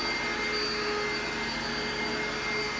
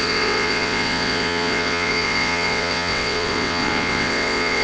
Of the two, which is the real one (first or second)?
first